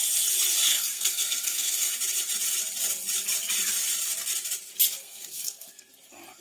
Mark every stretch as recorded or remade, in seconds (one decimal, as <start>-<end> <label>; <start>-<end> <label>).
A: 0.0-0.7 recorded; 0.7-1.9 remade; 1.9-5.0 recorded; 5.0-5.9 remade; 5.9-6.4 recorded